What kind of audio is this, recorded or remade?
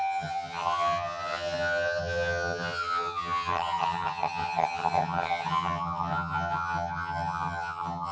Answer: remade